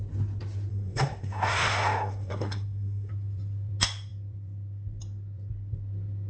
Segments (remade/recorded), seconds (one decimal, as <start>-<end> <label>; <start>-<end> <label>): 0.0-0.7 recorded; 0.7-3.1 remade; 3.1-6.3 recorded